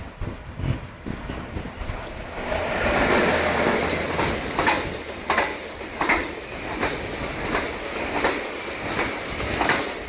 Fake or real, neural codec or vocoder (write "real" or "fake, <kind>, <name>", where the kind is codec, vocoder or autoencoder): real